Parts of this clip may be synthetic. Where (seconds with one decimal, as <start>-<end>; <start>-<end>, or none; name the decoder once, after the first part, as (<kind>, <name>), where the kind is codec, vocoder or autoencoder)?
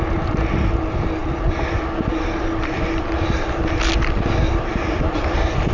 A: none